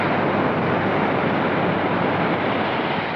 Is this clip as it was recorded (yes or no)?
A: yes